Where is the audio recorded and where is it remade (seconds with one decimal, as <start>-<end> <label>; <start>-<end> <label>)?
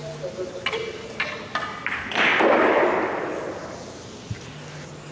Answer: 0.0-5.1 recorded